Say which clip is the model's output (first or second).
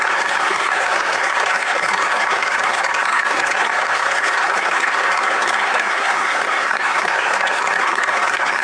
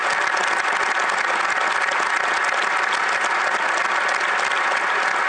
first